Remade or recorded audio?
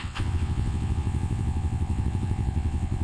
remade